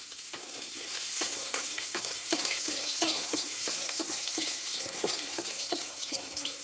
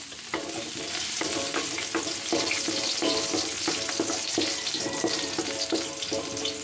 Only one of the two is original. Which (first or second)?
second